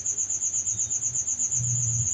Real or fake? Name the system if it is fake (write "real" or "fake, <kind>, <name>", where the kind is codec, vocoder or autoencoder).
real